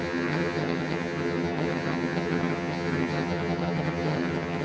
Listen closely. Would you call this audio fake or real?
fake